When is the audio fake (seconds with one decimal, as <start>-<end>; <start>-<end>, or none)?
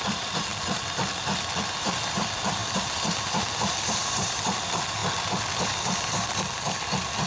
0.0-2.6; 3.4-7.3